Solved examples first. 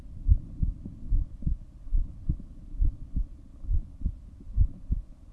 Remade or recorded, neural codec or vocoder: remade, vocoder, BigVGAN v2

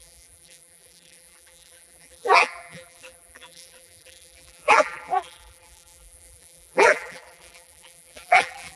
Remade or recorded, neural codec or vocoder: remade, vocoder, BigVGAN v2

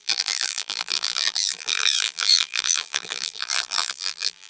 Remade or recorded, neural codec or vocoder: remade, vocoder, BigVGAN v2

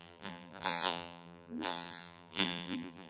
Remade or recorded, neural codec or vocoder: remade, vocoder, BigVGAN v2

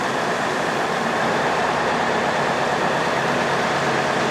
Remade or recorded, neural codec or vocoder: remade, vocoder, BigVGAN v2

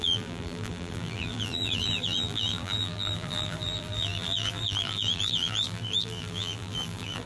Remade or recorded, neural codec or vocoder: remade, vocoder, BigVGAN v2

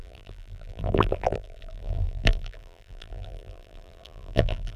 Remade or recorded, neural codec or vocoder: remade, vocoder, BigVGAN v2